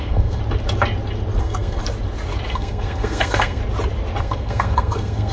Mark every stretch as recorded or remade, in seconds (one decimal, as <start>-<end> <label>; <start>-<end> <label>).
0.0-0.4 remade; 0.4-1.4 recorded; 1.4-1.8 remade; 1.8-2.5 recorded; 2.5-3.6 remade; 3.6-4.2 recorded; 4.2-5.3 remade